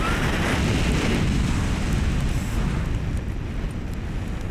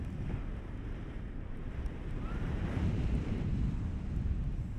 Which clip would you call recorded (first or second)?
first